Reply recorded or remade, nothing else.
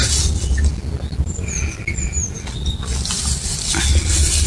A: recorded